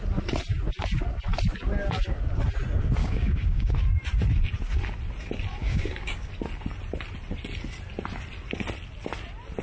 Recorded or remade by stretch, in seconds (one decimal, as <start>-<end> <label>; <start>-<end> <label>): 0.0-3.0 recorded; 3.0-3.7 remade; 3.7-5.6 recorded; 5.6-6.3 remade; 6.3-9.6 recorded